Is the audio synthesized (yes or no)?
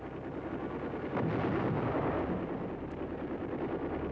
no